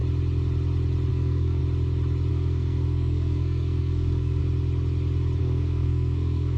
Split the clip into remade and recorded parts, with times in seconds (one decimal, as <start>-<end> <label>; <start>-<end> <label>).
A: 0.0-1.1 recorded; 1.1-1.6 remade; 1.6-2.3 recorded; 2.3-4.4 remade; 4.4-5.4 recorded; 5.4-6.6 remade